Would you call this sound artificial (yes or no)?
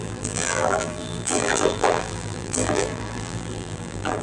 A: yes